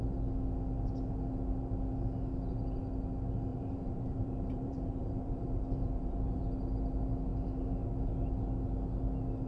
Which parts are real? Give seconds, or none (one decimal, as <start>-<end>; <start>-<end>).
0.0-3.5; 6.4-9.5